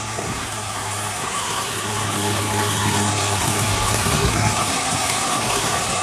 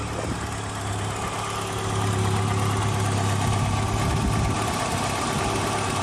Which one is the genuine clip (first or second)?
second